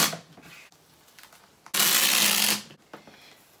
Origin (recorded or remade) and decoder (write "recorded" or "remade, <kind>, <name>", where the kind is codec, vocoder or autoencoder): recorded